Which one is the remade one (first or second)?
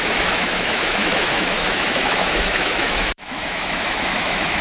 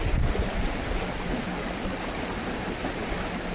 first